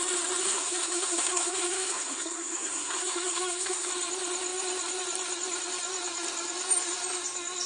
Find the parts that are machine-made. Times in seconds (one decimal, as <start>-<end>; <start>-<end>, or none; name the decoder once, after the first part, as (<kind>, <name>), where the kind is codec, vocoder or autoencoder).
0.4-3.9 (codec, SNAC)